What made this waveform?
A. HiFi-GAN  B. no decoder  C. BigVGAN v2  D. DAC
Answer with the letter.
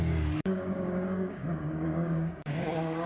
D